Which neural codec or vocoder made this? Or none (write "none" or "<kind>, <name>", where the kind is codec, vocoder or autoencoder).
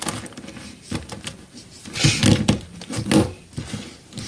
none